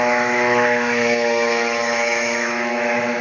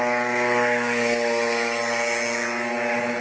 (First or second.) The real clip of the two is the second